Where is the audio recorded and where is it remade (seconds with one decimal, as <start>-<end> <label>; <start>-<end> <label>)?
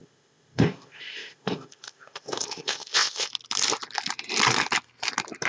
0.0-3.3 remade; 3.3-5.5 recorded